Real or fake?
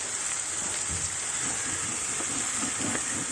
real